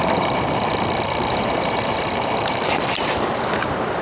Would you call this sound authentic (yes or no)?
no